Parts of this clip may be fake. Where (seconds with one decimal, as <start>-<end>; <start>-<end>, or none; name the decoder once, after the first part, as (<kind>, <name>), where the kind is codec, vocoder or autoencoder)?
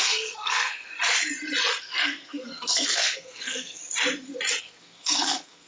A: 0.0-0.9 (codec, SNAC); 1.8-3.8; 4.6-5.7